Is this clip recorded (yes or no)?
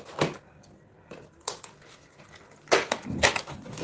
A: yes